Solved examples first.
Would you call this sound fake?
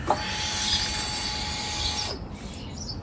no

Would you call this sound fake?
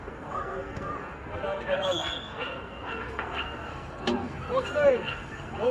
yes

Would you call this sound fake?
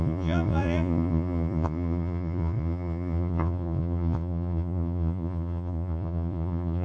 yes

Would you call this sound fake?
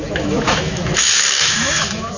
yes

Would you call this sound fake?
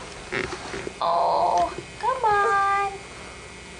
no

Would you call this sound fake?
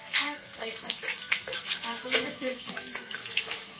yes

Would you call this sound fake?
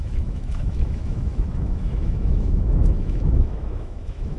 yes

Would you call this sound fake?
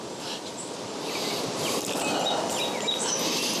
no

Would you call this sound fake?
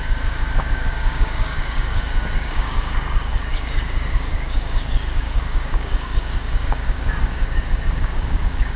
yes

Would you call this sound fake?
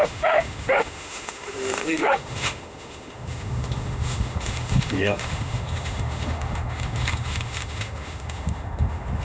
yes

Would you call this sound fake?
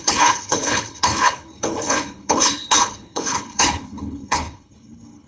yes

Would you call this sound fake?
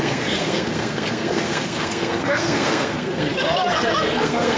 yes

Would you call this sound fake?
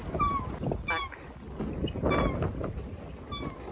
no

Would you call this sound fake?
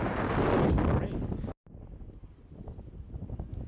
no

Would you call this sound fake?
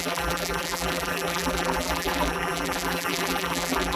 yes